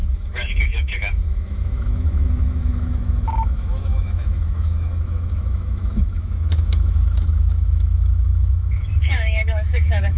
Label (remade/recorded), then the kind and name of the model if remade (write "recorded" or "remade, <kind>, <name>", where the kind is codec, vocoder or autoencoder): remade, autoencoder, DAC-VAE